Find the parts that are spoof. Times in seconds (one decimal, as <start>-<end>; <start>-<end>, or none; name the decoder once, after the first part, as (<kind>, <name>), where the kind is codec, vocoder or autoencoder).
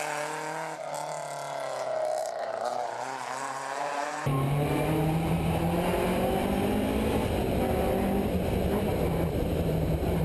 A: 2.2-5.5 (vocoder, BigVGAN v2); 8.9-10.2